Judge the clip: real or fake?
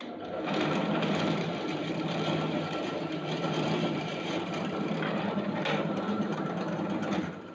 fake